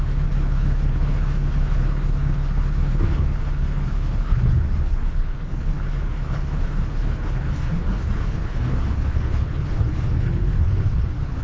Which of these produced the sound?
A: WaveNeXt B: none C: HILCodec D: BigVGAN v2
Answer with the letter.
C